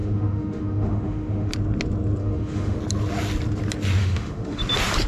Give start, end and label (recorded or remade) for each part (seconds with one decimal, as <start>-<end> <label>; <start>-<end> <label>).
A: 0.0-1.5 remade; 1.5-2.2 recorded; 2.2-2.8 remade; 2.8-4.0 recorded; 4.0-4.6 remade; 4.6-5.1 recorded